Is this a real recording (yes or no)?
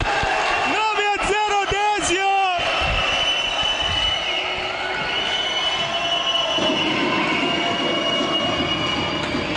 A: yes